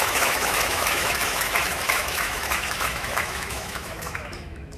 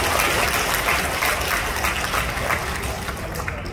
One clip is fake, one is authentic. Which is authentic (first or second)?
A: second